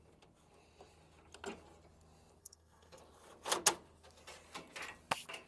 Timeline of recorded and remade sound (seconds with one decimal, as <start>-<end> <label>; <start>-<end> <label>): 0.0-2.4 recorded; 2.4-3.0 remade; 3.0-5.5 recorded

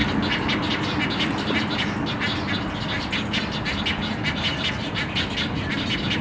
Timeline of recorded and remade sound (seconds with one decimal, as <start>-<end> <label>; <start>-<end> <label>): 0.0-6.2 recorded

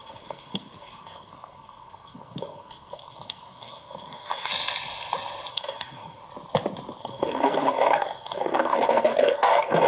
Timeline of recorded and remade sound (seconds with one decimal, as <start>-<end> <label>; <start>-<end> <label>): 0.0-4.5 remade; 4.5-5.5 recorded; 5.5-6.2 remade; 6.2-7.0 recorded; 7.0-9.9 remade

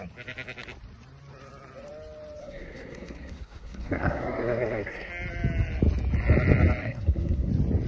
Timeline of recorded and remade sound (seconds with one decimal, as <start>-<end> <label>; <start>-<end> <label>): 0.0-2.4 recorded; 2.4-5.1 remade; 5.1-6.8 recorded; 6.8-7.5 remade; 7.5-7.9 recorded

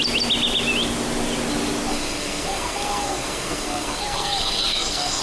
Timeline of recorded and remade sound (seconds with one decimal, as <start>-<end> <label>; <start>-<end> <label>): 0.0-1.9 recorded; 1.9-5.2 remade

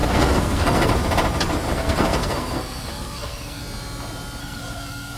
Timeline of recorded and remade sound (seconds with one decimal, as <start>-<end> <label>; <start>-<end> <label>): 0.0-0.9 remade; 0.9-1.7 recorded; 1.7-3.6 remade; 3.6-4.4 recorded; 4.4-5.2 remade

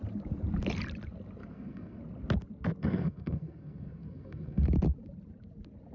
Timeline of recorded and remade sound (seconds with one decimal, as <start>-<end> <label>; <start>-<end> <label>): 0.0-1.4 recorded; 1.4-2.0 remade; 2.0-2.8 recorded; 2.8-4.6 remade; 4.6-5.9 recorded